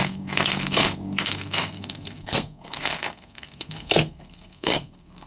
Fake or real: fake